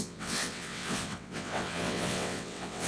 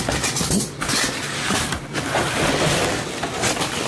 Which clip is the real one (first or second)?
second